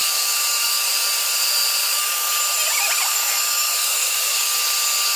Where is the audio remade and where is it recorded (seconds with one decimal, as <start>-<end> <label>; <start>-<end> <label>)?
0.0-0.9 remade; 0.9-1.8 recorded; 1.8-2.4 remade; 2.4-3.1 recorded; 3.1-4.6 remade; 4.6-5.2 recorded